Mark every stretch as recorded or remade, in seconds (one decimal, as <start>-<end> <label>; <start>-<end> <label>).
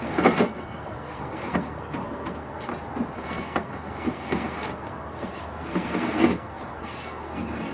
0.0-2.7 remade; 2.7-3.2 recorded; 3.2-7.7 remade